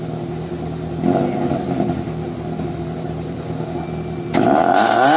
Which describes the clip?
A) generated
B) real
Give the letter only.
B